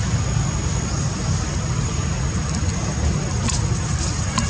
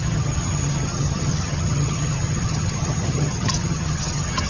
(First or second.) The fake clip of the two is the second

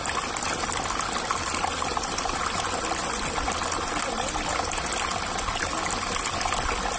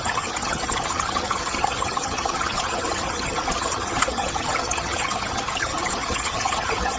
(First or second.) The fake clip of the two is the second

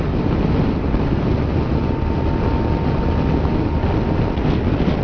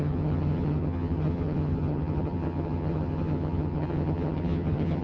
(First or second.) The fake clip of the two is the second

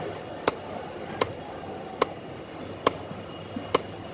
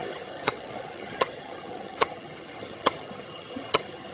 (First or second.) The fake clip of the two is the second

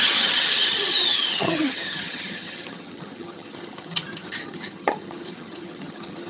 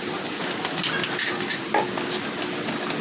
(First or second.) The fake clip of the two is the first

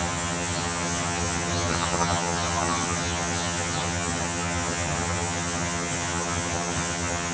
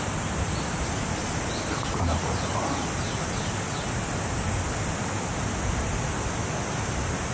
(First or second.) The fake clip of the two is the first